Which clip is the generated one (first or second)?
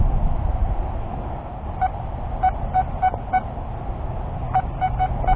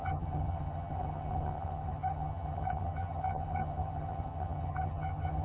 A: second